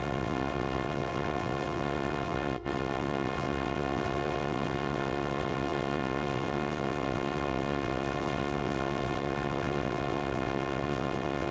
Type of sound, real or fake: fake